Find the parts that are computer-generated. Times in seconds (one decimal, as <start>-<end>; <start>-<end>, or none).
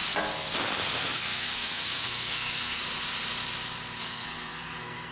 1.0-2.8; 4.0-5.1